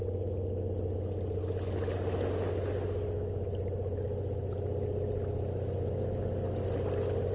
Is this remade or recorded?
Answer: recorded